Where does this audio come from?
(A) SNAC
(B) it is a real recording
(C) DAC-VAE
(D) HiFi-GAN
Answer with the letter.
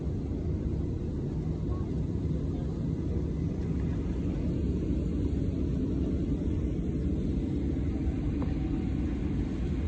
B